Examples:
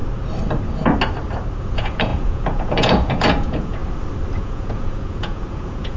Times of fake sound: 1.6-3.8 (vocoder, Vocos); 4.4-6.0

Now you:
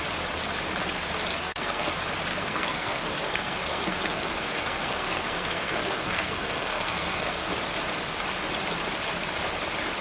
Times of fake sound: 1.3-1.9 (codec, SNAC); 2.3-7.5

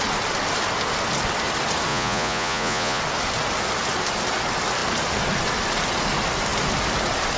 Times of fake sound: 1.9-3.0 (vocoder, Vocos)

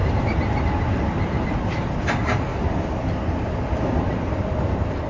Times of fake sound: none

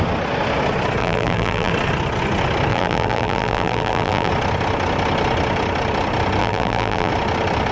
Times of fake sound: 1.0-1.7 (vocoder, BigVGAN v2); 2.7-4.3; 6.4-7.1

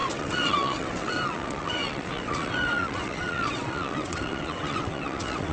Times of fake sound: 0.0-5.5 (vocoder, WaveNeXt)

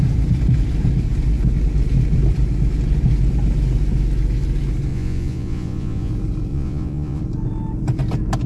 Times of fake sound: 4.9-6.1 (vocoder, Vocos); 6.5-7.2

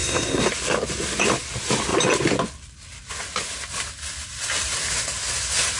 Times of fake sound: 0.0-0.5 (codec, SNAC)